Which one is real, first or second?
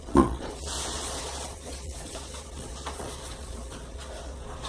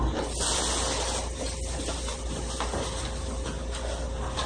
second